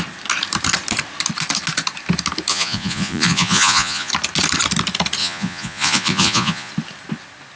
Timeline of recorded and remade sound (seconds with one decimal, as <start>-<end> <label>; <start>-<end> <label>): 0.0-2.5 recorded; 2.5-4.1 remade; 4.1-5.2 recorded; 5.2-6.7 remade; 6.7-7.6 recorded